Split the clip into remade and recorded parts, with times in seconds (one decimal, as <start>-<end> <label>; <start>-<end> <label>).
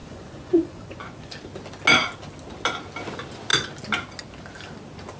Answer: 0.0-1.3 remade; 1.3-5.2 recorded